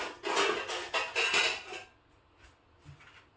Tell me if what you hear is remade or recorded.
recorded